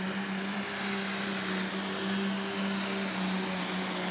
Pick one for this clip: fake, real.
real